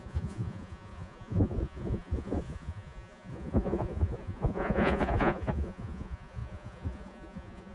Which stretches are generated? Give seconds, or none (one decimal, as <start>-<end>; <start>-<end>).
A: 0.0-7.7